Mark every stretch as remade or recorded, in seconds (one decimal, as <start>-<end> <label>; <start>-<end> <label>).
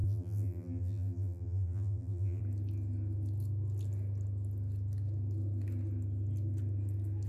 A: 0.0-2.4 remade; 2.4-7.3 recorded